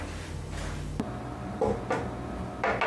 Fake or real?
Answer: real